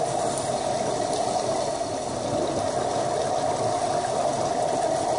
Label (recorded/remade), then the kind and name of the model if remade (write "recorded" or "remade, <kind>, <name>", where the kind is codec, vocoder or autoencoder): recorded